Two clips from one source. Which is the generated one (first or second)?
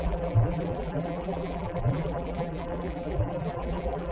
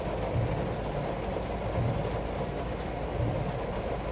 first